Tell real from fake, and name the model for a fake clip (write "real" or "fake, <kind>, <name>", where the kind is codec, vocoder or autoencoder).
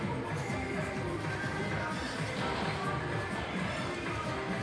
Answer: real